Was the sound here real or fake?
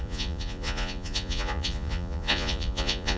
fake